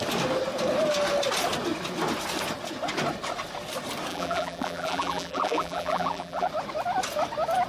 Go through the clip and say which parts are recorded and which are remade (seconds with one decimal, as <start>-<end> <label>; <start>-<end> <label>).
0.0-4.1 recorded; 4.1-6.5 remade; 6.5-7.7 recorded